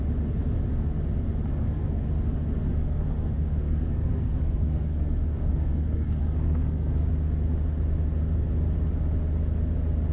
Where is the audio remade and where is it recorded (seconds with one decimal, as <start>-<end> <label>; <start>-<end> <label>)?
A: 0.0-1.5 recorded; 1.5-2.1 remade; 2.1-2.7 recorded; 2.7-7.1 remade; 7.1-10.1 recorded